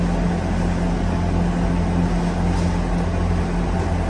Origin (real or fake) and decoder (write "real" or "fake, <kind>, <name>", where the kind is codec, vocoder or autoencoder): real